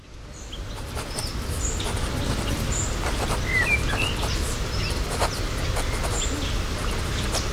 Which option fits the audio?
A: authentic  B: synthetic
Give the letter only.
A